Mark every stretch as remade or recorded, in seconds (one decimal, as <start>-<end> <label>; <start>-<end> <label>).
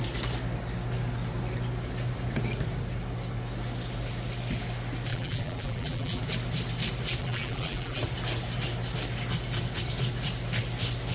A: 0.0-5.1 recorded; 5.1-6.2 remade; 6.2-7.2 recorded; 7.2-8.0 remade; 8.0-11.1 recorded